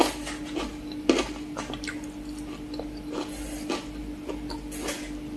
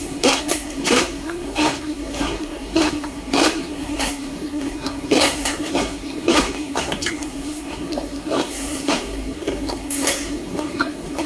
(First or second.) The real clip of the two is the first